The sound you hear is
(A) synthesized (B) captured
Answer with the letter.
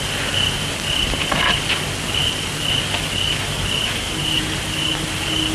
B